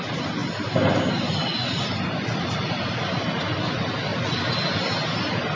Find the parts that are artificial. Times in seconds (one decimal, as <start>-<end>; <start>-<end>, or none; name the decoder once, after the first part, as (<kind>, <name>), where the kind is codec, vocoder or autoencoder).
none